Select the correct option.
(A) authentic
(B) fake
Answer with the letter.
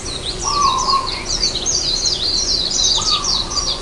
B